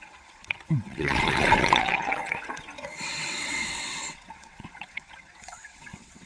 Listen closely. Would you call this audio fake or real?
fake